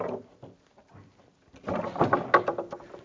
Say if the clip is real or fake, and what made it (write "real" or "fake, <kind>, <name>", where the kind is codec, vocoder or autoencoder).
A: real